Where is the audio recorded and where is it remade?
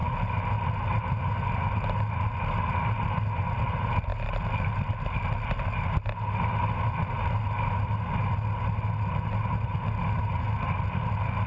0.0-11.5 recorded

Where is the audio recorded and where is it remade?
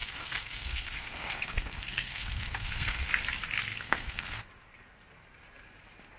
0.0-3.1 remade; 3.1-3.7 recorded; 3.7-4.4 remade; 4.4-6.2 recorded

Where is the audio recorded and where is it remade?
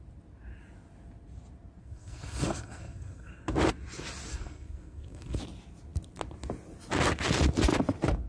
0.0-1.8 recorded; 1.8-3.3 remade; 3.3-4.3 recorded; 4.3-5.4 remade; 5.4-8.3 recorded